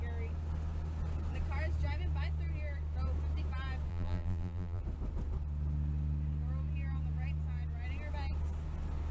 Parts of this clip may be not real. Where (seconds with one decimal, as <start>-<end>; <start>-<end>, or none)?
3.9-4.8